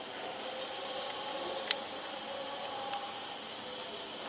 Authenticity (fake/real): real